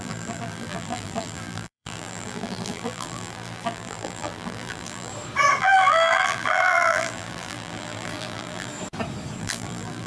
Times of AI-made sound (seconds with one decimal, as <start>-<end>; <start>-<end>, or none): 0.0-5.1; 5.6-8.7; 9.4-10.1